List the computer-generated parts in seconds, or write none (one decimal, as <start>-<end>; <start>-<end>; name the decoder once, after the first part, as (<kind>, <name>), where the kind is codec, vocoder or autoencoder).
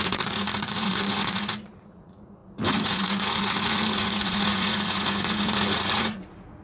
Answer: 0.0-6.6 (vocoder, Vocos)